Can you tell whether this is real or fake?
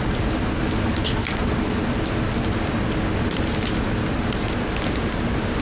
real